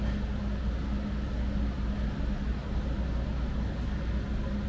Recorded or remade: recorded